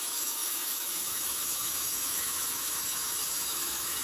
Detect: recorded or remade remade